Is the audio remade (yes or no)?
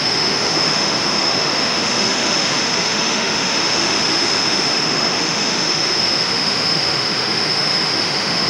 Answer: yes